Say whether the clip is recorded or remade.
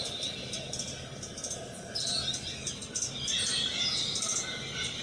recorded